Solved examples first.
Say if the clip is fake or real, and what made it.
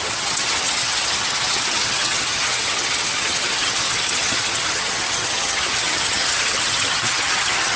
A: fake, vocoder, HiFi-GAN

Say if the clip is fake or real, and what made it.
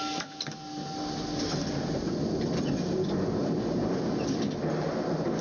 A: real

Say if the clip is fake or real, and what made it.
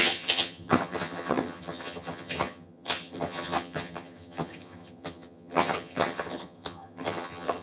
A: fake, vocoder, HiFi-GAN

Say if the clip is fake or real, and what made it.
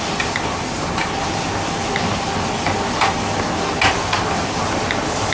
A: real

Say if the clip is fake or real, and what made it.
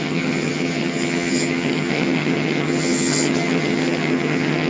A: fake, vocoder, HiFi-GAN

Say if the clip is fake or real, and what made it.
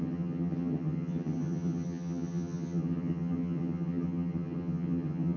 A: fake, vocoder, HiFi-GAN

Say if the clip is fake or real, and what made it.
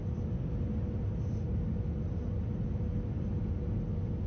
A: real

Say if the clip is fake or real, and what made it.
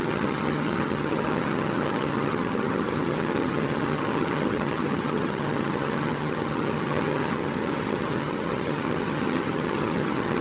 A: fake, vocoder, HiFi-GAN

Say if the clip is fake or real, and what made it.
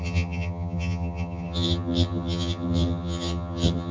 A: fake, vocoder, HiFi-GAN